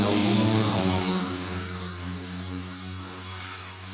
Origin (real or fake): fake